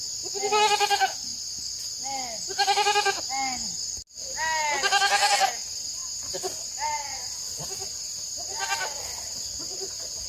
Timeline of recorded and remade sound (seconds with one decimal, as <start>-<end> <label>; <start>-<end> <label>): 0.0-10.3 recorded